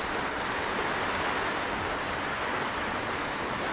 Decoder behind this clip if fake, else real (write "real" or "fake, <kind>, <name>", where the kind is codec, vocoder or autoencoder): real